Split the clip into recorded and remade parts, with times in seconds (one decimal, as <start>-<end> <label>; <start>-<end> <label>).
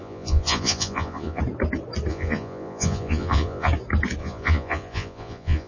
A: 0.0-1.4 remade; 1.4-2.1 recorded; 2.1-3.7 remade; 3.7-4.2 recorded; 4.2-5.7 remade